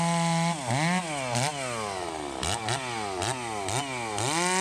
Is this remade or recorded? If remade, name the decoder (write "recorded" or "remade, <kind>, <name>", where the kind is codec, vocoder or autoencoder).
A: recorded